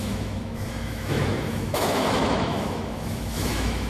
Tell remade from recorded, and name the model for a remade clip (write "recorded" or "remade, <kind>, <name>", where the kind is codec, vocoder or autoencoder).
remade, autoencoder, DAC-VAE